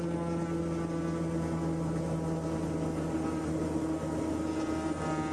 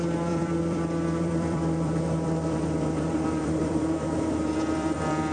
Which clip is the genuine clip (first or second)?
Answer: first